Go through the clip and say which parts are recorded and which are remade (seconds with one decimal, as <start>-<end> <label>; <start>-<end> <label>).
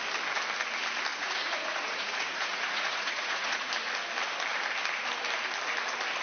0.0-1.1 recorded; 1.1-3.7 remade; 3.7-6.2 recorded